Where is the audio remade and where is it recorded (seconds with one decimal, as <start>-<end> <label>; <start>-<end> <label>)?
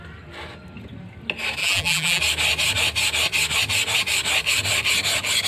0.0-1.6 recorded; 1.6-2.2 remade; 2.2-5.5 recorded